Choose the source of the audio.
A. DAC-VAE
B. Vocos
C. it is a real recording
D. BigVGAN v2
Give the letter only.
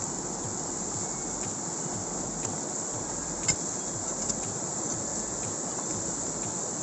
C